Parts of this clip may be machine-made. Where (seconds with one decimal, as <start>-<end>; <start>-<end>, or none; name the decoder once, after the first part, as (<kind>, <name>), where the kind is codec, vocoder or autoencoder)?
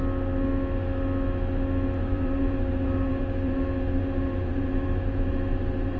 2.0-6.0 (vocoder, BigVGAN v2)